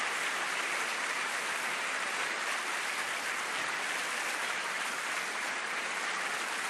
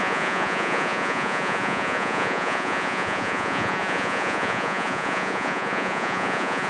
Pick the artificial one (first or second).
second